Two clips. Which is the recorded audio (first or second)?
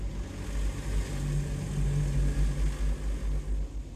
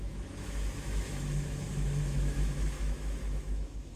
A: first